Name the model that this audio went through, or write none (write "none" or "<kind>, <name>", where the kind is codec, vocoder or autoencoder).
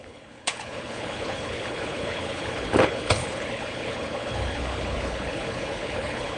codec, HILCodec